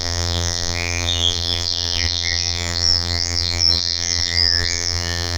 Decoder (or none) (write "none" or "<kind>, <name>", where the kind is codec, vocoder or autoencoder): vocoder, BigVGAN v2